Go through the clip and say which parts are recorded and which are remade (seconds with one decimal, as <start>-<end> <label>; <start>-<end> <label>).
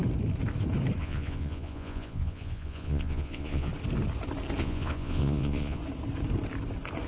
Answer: 0.0-1.0 recorded; 1.0-3.7 remade; 3.7-4.6 recorded; 4.6-5.8 remade; 5.8-7.1 recorded